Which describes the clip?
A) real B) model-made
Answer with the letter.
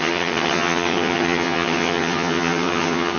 B